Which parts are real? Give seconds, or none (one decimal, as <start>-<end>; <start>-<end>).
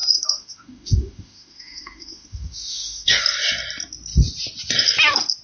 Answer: 3.2-5.4